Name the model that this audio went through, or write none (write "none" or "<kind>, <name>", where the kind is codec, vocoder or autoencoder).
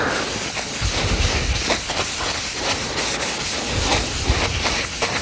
none